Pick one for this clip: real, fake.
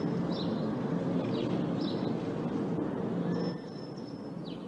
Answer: real